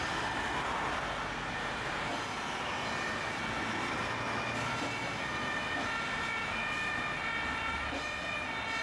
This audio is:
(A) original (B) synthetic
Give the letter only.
A